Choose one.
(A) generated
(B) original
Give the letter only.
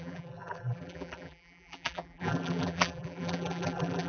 A